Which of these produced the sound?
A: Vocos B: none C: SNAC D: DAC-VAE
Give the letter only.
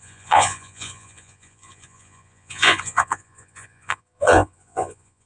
A